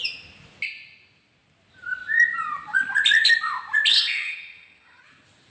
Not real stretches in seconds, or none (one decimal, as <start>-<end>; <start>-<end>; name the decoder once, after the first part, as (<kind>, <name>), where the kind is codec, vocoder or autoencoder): 3.9-5.0 (vocoder, HiFi-GAN)